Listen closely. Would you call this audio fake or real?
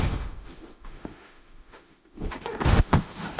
fake